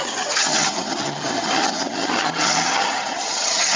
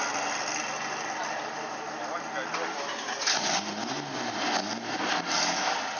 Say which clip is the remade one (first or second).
first